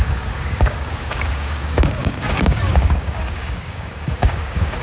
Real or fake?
fake